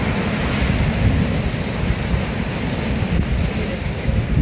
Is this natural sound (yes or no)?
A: yes